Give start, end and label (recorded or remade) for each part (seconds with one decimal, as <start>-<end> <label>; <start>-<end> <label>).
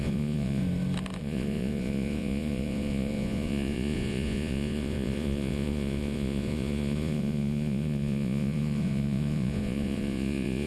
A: 0.0-0.6 remade; 0.6-1.2 recorded; 1.2-10.7 remade